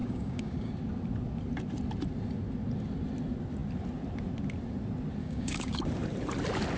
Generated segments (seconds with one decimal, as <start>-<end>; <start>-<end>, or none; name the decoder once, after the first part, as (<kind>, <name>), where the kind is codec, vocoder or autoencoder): 0.0-0.7 (codec, DAC); 5.2-5.8